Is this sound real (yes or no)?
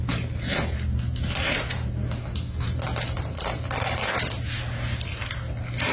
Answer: yes